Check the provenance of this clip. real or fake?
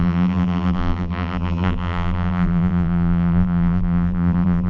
fake